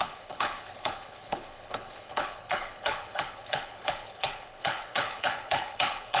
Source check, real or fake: fake